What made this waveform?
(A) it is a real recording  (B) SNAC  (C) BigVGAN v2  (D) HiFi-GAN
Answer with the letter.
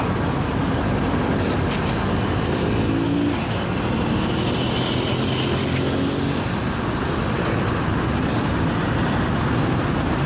A